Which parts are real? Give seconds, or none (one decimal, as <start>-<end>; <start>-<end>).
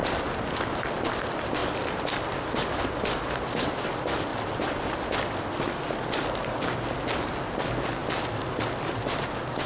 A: 0.6-1.6; 2.4-4.3; 7.0-9.7